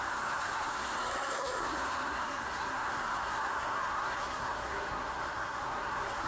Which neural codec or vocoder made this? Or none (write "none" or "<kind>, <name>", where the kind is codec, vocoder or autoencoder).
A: codec, SNAC